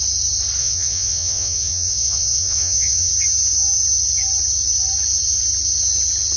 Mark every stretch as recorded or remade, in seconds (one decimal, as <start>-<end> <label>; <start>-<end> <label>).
0.0-0.6 recorded; 0.6-3.1 remade; 3.1-6.4 recorded